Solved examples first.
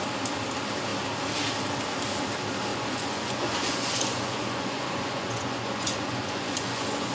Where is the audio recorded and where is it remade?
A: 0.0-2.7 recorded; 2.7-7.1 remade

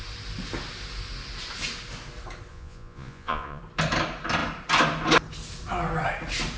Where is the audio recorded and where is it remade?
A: 0.0-2.5 recorded; 2.5-3.6 remade; 3.6-6.6 recorded

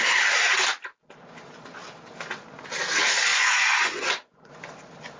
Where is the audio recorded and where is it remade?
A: 0.0-3.3 recorded; 3.3-4.5 remade; 4.5-5.2 recorded

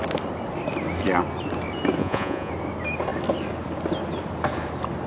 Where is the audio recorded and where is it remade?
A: 0.0-2.0 recorded; 2.0-2.5 remade; 2.5-5.1 recorded

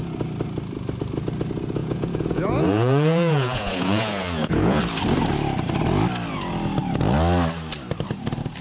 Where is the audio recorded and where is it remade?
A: 0.0-1.8 recorded; 1.8-4.8 remade; 4.8-8.6 recorded

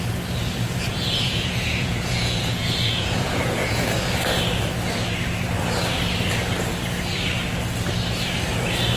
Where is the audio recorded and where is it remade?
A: 0.0-0.9 recorded; 0.9-3.9 remade; 3.9-9.0 recorded